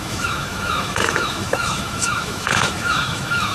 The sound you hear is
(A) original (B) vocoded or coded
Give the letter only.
B